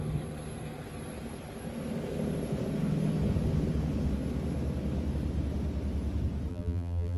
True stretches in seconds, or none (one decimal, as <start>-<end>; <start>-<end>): 0.0-6.5